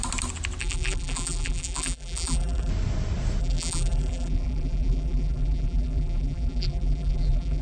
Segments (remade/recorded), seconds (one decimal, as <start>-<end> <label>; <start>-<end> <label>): 0.0-0.6 recorded; 0.6-2.7 remade; 2.7-3.4 recorded; 3.4-7.6 remade